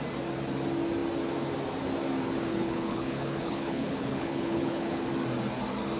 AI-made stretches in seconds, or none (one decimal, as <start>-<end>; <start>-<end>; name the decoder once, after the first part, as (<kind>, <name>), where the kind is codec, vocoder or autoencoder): 2.5-5.1 (codec, HILCodec)